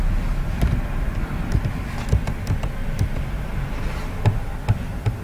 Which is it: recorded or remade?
recorded